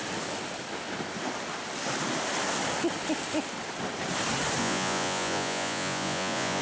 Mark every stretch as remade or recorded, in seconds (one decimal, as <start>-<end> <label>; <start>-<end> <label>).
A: 0.0-4.6 recorded; 4.6-6.6 remade